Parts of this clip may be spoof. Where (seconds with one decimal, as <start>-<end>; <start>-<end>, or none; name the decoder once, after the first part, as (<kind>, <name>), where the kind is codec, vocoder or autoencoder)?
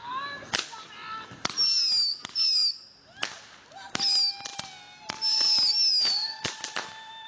none